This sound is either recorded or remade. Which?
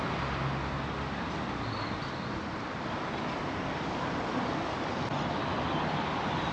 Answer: recorded